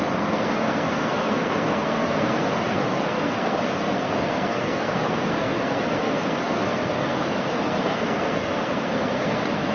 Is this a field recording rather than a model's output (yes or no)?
no